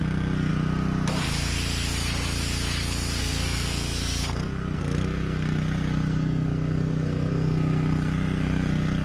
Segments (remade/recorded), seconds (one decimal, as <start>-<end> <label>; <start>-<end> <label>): 0.0-0.5 remade; 0.5-3.2 recorded; 3.2-9.0 remade